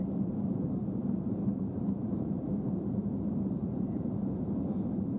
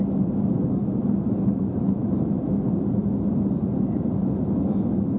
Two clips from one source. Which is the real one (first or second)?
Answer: second